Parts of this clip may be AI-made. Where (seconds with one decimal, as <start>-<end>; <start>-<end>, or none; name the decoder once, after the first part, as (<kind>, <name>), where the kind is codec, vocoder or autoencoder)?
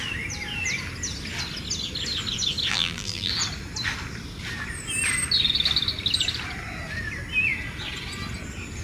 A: 2.7-3.3 (vocoder, BigVGAN v2)